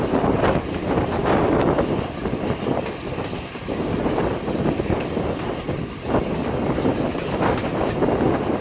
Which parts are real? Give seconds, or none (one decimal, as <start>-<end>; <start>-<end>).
0.0-8.6